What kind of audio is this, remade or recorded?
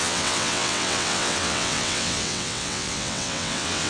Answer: remade